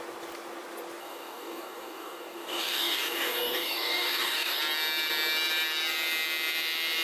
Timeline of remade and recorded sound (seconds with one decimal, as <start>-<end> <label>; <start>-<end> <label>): 0.0-1.0 recorded; 1.0-4.6 remade; 4.6-7.0 recorded